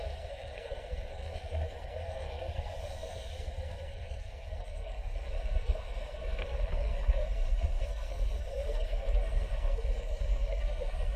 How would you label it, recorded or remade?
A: remade